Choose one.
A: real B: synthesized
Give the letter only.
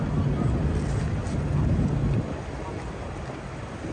A